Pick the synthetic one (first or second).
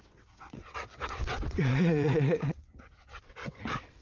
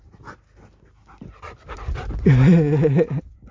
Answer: first